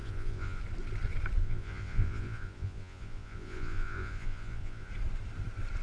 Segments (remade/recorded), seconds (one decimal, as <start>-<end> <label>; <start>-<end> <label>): 0.0-0.6 remade; 0.6-1.4 recorded; 1.4-4.9 remade; 4.9-5.8 recorded